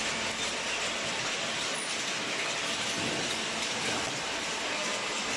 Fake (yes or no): no